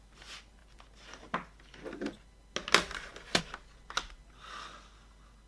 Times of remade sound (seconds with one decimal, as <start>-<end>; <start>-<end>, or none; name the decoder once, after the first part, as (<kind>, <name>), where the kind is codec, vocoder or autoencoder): none